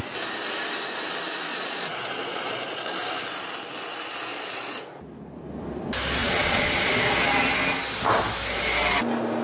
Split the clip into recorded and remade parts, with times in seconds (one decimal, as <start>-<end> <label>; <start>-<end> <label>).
0.0-1.5 recorded; 1.5-2.9 remade; 2.9-4.3 recorded; 4.3-4.8 remade; 4.8-6.2 recorded; 6.2-6.9 remade; 6.9-9.4 recorded